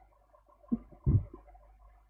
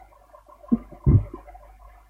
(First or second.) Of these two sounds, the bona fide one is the second